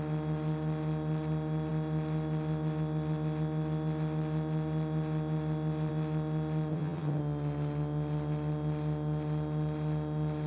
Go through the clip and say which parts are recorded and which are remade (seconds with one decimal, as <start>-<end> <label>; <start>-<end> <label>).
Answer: 0.0-6.7 recorded; 6.7-7.2 remade; 7.2-10.5 recorded